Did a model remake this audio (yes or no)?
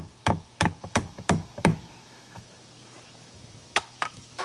yes